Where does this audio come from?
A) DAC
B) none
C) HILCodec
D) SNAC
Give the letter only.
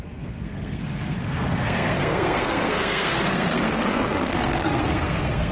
D